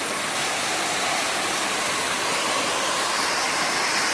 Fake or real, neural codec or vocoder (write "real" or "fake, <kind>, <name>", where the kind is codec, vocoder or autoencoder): real